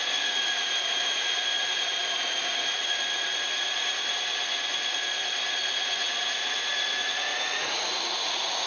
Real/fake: fake